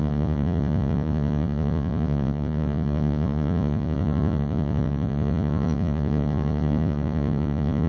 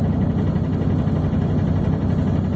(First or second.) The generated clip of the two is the first